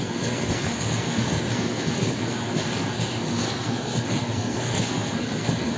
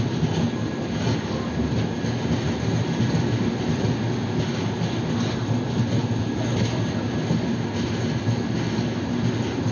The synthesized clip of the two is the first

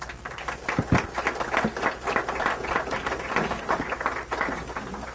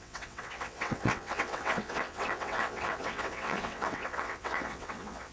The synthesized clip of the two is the second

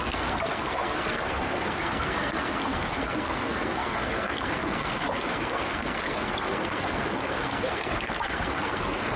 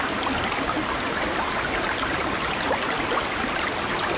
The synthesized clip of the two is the first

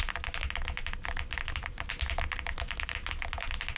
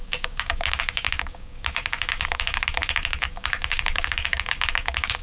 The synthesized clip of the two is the second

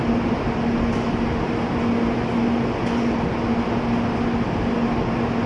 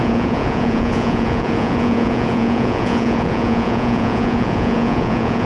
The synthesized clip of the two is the second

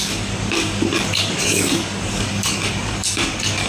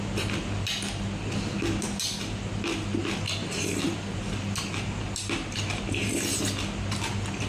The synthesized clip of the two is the first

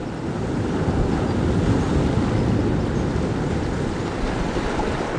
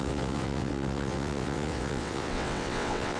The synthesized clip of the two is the second